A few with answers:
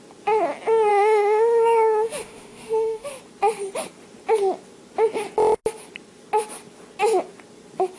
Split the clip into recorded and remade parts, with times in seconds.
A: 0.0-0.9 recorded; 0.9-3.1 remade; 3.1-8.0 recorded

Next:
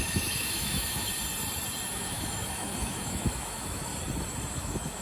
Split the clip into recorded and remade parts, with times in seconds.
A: 0.0-1.1 remade; 1.1-1.9 recorded; 1.9-3.9 remade; 3.9-4.5 recorded; 4.5-5.0 remade

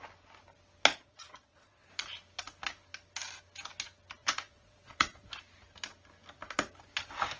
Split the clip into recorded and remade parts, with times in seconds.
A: 0.0-0.9 recorded; 0.9-1.9 remade; 1.9-4.2 recorded; 4.2-5.2 remade; 5.2-7.4 recorded

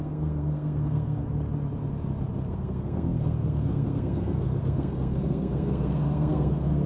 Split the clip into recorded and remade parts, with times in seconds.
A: 0.0-1.2 remade; 1.2-2.5 recorded; 2.5-6.9 remade